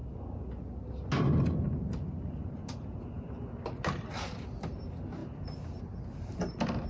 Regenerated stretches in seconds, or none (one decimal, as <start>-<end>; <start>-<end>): none